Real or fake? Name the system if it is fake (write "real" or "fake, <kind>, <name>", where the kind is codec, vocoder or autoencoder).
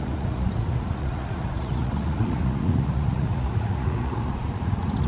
fake, vocoder, Vocos